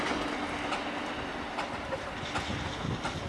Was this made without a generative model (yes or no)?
yes